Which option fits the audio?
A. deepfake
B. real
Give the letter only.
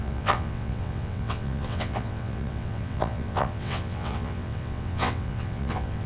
A